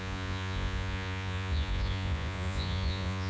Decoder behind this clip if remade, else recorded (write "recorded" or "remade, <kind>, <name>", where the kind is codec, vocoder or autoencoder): remade, vocoder, Vocos